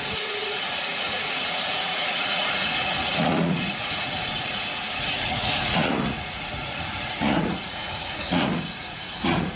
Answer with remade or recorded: remade